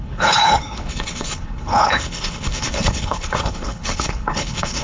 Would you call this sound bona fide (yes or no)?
no